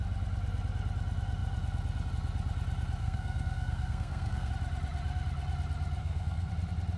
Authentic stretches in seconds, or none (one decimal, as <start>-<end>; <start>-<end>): 0.0-3.0; 4.5-6.0; 6.5-7.0